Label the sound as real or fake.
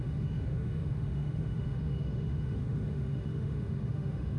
fake